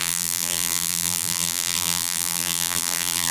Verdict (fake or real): fake